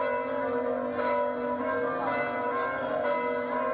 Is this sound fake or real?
real